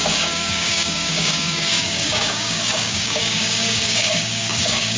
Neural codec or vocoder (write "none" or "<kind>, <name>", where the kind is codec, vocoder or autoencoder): codec, DAC